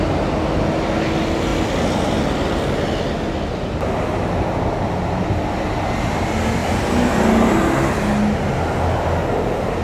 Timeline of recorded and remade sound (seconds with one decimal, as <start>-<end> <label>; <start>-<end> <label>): 0.0-9.8 recorded

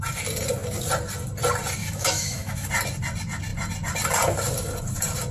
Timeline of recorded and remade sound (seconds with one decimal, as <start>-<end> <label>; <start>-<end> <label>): 0.0-1.8 recorded; 1.8-2.7 remade; 2.7-5.3 recorded

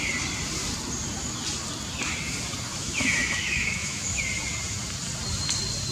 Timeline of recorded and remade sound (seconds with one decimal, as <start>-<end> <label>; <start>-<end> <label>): 0.0-2.7 recorded; 2.7-4.2 remade; 4.2-5.9 recorded

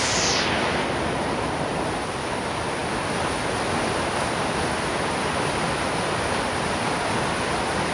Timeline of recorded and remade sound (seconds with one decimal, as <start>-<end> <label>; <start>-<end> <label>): 0.0-7.9 recorded

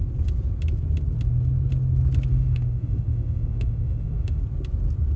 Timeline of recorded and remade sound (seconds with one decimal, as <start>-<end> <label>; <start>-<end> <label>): 0.0-2.3 recorded; 2.3-4.4 remade; 4.4-5.2 recorded

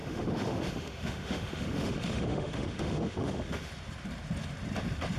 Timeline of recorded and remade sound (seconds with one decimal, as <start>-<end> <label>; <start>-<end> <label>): 0.0-3.7 remade; 3.7-5.2 recorded

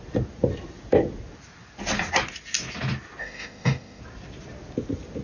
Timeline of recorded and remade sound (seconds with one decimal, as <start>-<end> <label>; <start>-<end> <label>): 0.0-3.2 recorded; 3.2-4.0 remade; 4.0-5.2 recorded

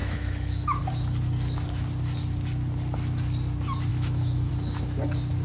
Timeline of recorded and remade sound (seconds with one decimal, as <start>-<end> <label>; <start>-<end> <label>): 0.0-0.8 remade; 0.8-3.9 recorded; 3.9-4.5 remade; 4.5-5.4 recorded